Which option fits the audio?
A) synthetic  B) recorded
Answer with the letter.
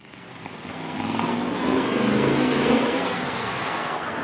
A